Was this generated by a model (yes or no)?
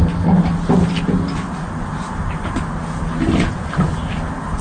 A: no